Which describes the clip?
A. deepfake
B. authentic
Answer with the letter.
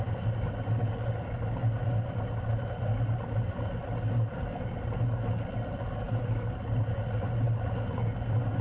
B